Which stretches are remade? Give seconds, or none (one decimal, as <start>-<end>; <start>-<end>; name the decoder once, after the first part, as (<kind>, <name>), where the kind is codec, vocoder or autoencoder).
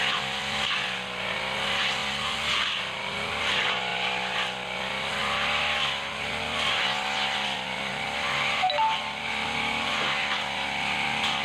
none